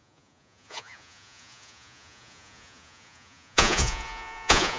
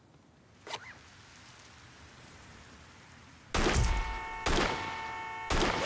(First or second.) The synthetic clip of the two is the first